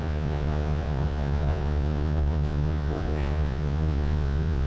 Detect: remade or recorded remade